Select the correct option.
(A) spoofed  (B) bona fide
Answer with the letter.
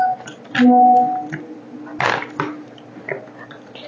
B